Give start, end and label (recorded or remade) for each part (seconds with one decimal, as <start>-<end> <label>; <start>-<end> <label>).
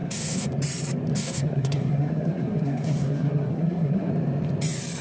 0.0-0.6 remade; 0.6-1.1 recorded; 1.1-4.1 remade; 4.1-5.0 recorded